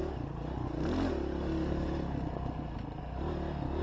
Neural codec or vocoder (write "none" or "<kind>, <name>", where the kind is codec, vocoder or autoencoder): none